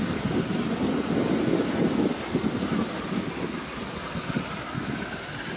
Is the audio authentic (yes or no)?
yes